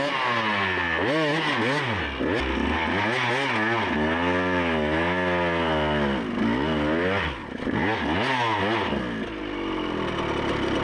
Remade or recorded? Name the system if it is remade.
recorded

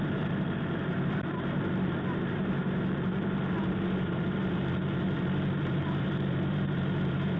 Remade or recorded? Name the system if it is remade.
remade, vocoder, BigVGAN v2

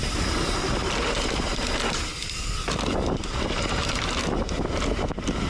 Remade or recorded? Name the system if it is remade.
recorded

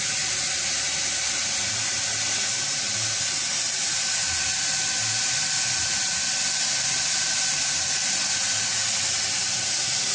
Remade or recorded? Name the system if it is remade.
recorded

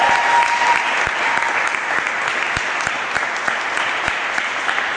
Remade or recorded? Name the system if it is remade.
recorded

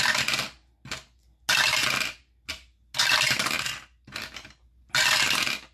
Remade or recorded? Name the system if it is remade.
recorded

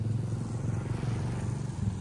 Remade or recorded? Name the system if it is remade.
recorded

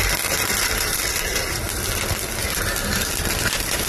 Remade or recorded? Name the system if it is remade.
remade, vocoder, BigVGAN v2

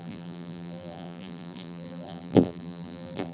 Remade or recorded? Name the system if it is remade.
remade, vocoder, BigVGAN v2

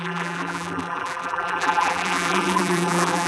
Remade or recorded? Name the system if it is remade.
remade, vocoder, BigVGAN v2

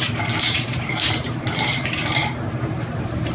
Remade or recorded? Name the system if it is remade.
remade, vocoder, BigVGAN v2